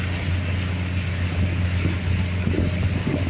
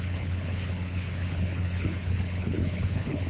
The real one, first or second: first